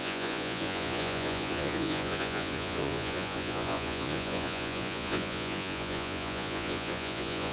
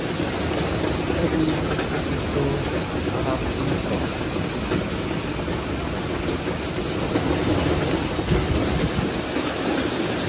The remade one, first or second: first